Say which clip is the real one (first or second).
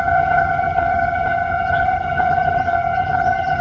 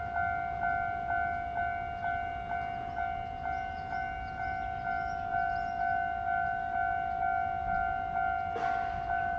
second